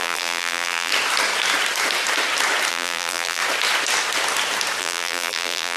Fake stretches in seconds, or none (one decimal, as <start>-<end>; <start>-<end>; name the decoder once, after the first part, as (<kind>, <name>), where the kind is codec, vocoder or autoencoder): 0.0-0.9 (vocoder, BigVGAN v2); 2.7-3.4; 4.8-5.8